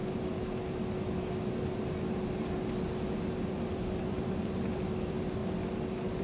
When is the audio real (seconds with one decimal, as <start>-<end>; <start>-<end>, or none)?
0.0-3.6; 5.4-6.2